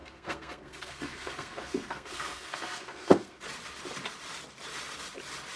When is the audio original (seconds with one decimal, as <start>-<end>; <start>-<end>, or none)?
3.4-5.6